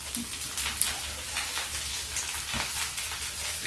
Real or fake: real